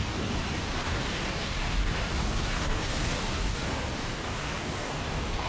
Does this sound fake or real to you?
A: fake